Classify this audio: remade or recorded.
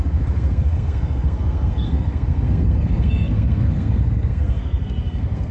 remade